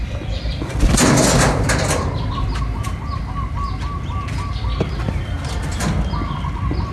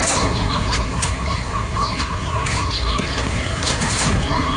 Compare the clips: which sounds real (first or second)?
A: first